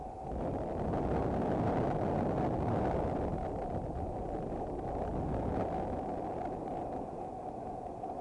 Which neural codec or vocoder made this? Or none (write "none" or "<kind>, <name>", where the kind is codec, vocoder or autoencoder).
none